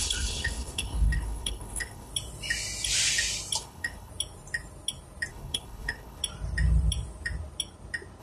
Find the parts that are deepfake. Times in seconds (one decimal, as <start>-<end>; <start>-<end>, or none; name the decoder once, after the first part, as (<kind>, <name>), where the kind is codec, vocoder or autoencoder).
0.0-2.1 (codec, HILCodec); 3.6-4.1; 5.3-6.2